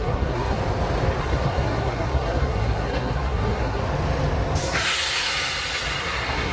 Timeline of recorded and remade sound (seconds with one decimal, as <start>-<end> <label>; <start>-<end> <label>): 0.0-0.6 remade; 0.6-1.2 recorded; 1.2-3.8 remade; 3.8-4.6 recorded; 4.6-5.3 remade; 5.3-6.0 recorded; 6.0-6.5 remade